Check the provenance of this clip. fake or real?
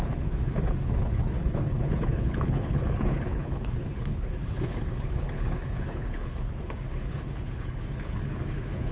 fake